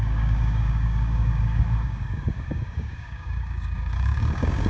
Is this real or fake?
fake